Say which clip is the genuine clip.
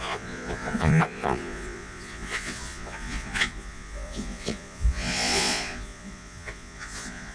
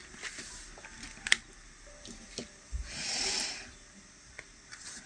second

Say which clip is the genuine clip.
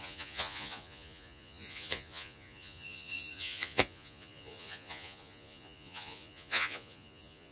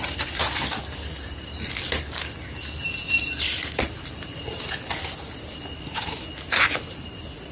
second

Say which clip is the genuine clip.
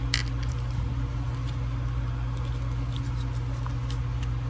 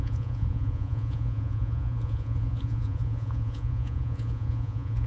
first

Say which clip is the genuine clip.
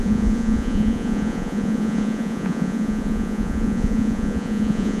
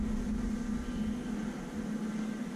second